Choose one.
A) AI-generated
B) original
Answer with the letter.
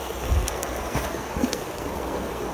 A